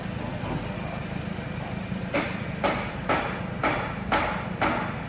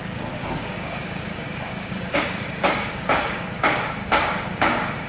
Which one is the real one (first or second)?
first